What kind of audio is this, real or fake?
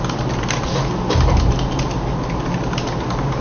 real